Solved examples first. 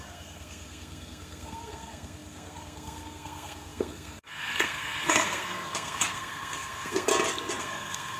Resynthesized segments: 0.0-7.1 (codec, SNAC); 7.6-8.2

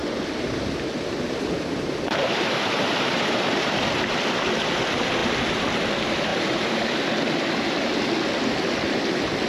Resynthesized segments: 0.0-3.8 (vocoder, BigVGAN v2); 6.3-6.9

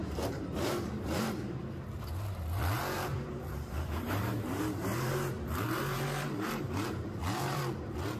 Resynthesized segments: 0.0-1.6 (vocoder, BigVGAN v2); 3.1-7.6

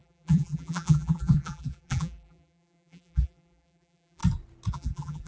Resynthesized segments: 0.0-4.2 (vocoder, BigVGAN v2); 4.7-5.3

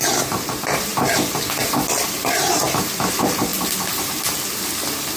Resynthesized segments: 0.0-0.9 (vocoder, BigVGAN v2); 2.1-3.5

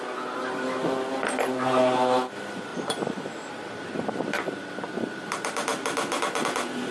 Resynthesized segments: 2.7-3.9 (vocoder, BigVGAN v2)

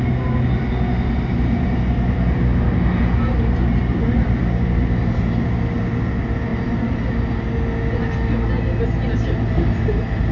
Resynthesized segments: none